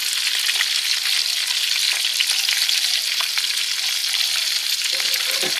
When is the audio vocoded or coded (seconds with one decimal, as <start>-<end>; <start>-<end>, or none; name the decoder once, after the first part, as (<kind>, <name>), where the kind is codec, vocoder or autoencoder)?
4.0-4.9 (vocoder, BigVGAN v2)